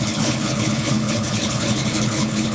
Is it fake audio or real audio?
fake